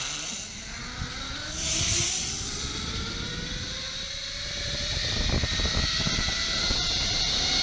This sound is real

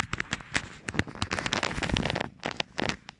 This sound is real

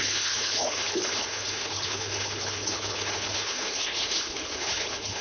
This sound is fake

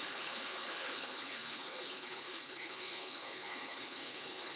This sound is fake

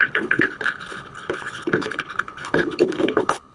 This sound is fake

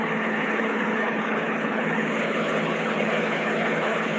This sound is fake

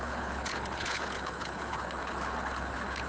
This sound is fake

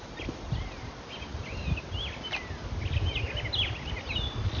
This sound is real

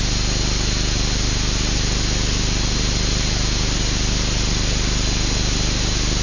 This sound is real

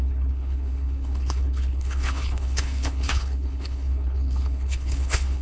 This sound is fake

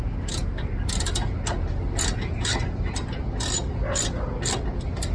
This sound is real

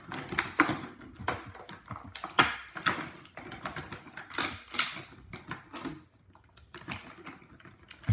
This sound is real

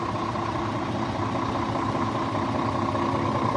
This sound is real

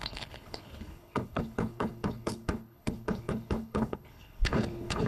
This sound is fake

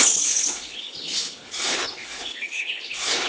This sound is fake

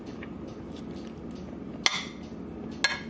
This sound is real